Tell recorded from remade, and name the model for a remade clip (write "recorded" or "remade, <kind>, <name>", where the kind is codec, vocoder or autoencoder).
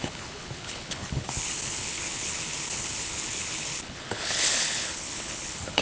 remade, codec, HILCodec